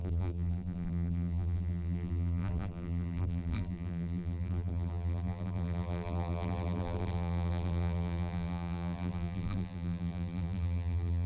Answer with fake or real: fake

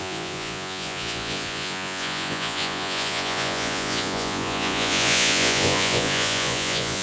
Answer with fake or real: fake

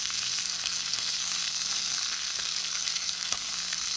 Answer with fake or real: fake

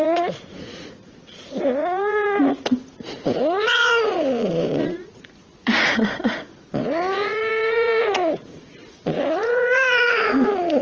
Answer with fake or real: fake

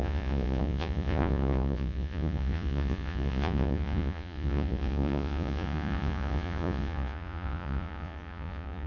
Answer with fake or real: fake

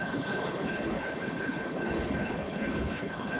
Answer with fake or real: fake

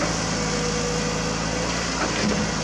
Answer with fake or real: real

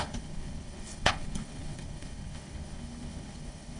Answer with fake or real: fake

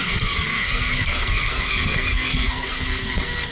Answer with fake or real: fake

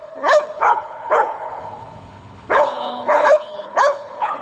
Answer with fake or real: fake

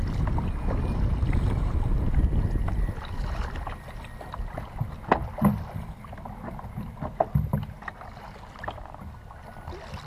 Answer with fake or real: real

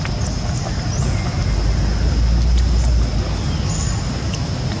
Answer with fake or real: real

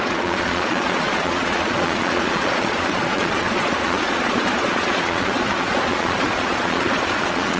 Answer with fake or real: fake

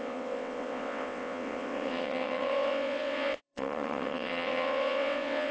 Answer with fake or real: fake